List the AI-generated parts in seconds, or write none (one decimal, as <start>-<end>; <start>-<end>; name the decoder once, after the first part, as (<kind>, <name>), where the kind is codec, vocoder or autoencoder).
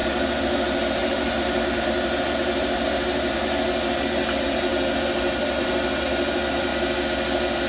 0.0-6.7 (vocoder, BigVGAN v2)